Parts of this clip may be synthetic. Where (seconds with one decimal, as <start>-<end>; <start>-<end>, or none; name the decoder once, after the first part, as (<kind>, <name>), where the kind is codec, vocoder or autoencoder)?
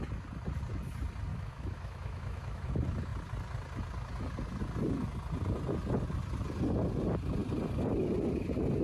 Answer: 1.3-2.7 (autoencoder, DAC-VAE)